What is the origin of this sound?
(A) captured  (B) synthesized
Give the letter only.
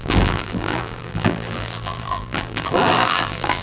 B